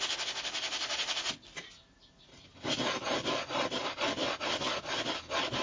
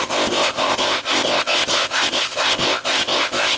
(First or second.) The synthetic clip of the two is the second